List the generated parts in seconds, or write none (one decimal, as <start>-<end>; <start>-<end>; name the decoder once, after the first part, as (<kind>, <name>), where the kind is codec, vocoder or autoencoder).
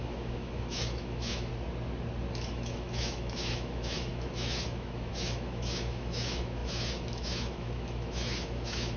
0.0-1.5 (autoencoder, DAC-VAE); 2.3-9.0